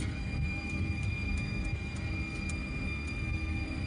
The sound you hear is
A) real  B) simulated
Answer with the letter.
B